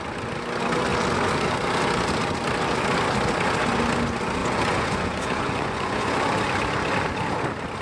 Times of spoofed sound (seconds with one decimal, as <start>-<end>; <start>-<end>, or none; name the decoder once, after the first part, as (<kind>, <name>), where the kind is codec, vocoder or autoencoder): 4.4-6.1 (vocoder, Vocos)